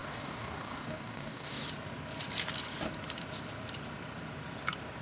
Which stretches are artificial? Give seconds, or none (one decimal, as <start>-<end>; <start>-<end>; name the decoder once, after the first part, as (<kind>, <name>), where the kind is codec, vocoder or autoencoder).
0.0-1.6 (codec, DAC)